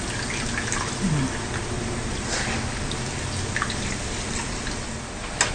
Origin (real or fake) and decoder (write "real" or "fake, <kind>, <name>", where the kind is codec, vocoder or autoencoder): real